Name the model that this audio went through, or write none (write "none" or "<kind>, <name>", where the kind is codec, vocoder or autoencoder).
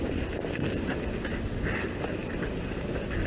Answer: none